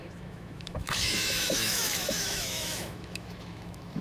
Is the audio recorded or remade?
remade